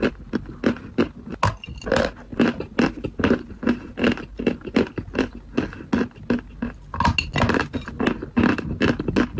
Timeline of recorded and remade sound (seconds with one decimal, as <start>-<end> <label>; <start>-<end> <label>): 0.0-9.4 recorded